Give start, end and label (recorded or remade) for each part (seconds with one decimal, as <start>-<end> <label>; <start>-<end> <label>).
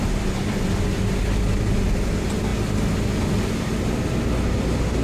0.0-5.0 recorded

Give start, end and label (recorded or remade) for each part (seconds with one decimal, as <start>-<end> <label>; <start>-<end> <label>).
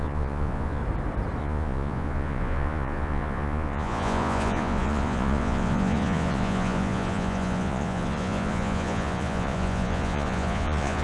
0.0-0.8 remade; 0.8-1.4 recorded; 1.4-11.0 remade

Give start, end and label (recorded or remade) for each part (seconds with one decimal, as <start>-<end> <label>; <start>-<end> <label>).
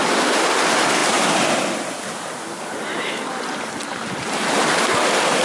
0.0-5.4 recorded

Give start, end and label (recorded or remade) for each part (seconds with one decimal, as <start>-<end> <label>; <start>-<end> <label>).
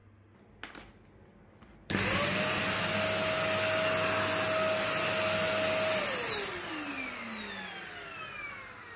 0.0-9.0 recorded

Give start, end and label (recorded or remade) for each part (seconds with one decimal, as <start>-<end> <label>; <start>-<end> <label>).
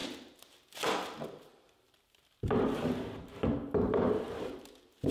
0.0-5.1 recorded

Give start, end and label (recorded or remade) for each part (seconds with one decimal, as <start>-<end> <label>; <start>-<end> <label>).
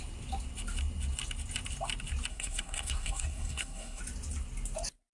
0.0-2.3 recorded; 2.3-4.0 remade; 4.0-5.2 recorded